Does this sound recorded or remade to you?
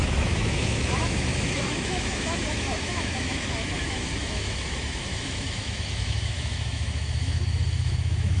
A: remade